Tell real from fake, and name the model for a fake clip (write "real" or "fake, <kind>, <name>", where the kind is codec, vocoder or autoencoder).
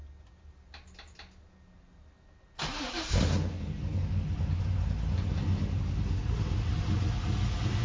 real